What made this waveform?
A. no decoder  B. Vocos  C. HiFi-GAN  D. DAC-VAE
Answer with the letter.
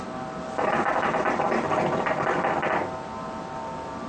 A